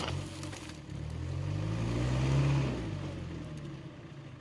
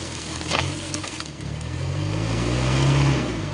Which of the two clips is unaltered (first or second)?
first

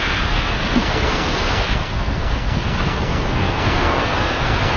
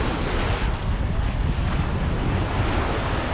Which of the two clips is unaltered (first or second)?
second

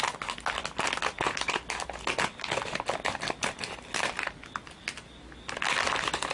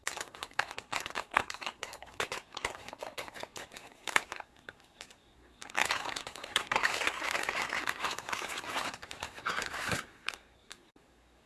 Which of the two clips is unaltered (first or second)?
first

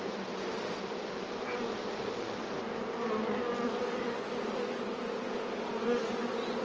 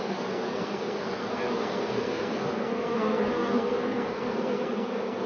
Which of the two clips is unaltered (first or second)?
first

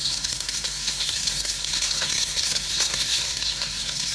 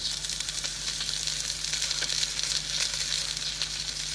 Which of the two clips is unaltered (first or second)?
second